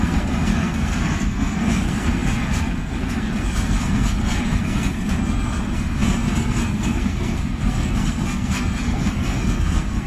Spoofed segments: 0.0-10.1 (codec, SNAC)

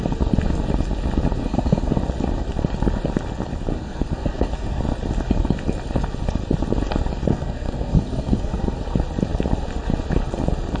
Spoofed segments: 1.4-2.0 (codec, SNAC); 3.7-4.8; 7.3-8.8

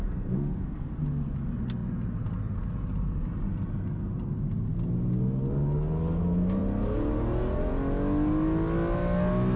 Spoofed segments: 0.0-1.0 (codec, SNAC)

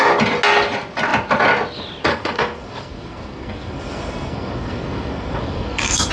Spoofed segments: 2.1-6.1 (codec, SNAC)

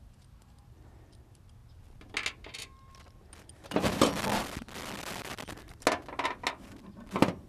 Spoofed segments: none

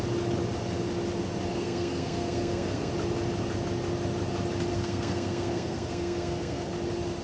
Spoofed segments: 1.5-2.9 (codec, SNAC); 4.7-6.7